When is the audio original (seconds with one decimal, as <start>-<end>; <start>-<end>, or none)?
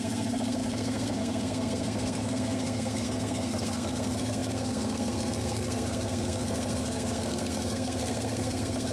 none